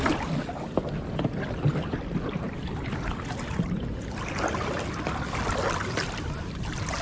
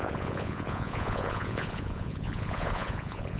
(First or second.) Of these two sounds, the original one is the first